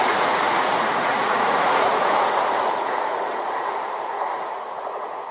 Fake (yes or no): yes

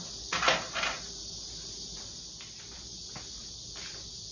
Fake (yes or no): no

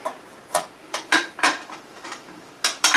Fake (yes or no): yes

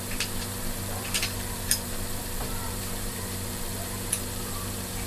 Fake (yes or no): yes